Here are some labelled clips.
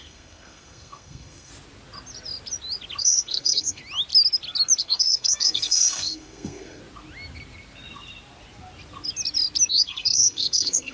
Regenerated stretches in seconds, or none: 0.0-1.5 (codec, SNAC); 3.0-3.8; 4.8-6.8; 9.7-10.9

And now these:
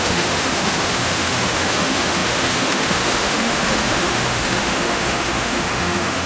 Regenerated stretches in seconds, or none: 0.0-6.3 (autoencoder, DAC-VAE)

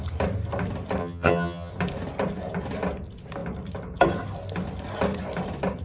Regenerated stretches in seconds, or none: 1.0-1.7 (vocoder, HiFi-GAN)

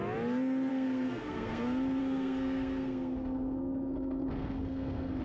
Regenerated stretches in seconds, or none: 0.7-1.6 (codec, SNAC); 2.0-5.2

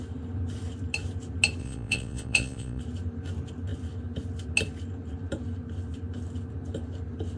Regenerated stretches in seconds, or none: 1.6-2.8 (vocoder, Vocos)

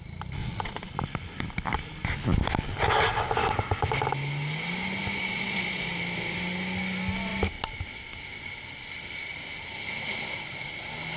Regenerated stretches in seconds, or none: 0.4-0.9 (vocoder, Vocos); 5.2-5.9